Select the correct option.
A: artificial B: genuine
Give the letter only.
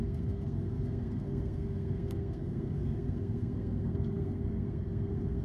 A